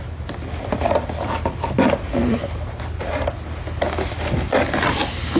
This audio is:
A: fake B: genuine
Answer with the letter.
B